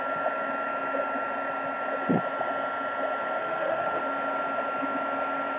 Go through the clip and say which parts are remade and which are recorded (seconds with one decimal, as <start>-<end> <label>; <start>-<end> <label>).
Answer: 0.0-3.4 recorded; 3.4-4.0 remade; 4.0-5.6 recorded